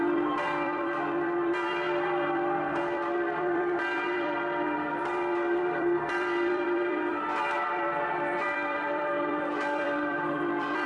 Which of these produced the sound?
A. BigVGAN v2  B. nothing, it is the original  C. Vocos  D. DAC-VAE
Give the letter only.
A